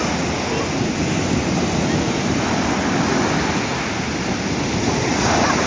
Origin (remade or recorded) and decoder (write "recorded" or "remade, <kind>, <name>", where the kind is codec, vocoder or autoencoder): recorded